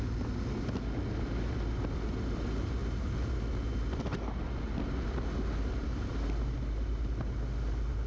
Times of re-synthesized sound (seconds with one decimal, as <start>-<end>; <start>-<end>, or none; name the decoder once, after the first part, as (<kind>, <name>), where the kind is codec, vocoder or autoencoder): none